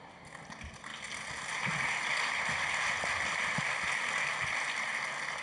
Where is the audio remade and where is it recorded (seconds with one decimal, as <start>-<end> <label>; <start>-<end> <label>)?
0.0-5.4 recorded